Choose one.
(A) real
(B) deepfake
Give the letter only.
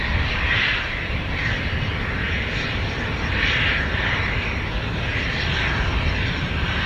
A